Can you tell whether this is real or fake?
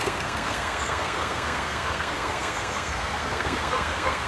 fake